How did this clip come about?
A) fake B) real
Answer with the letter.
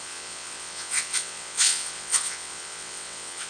A